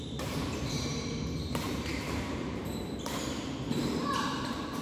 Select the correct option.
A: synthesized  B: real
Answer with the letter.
A